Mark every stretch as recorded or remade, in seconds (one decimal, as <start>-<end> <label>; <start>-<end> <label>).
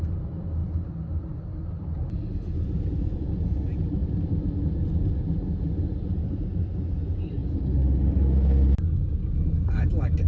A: 0.0-10.3 recorded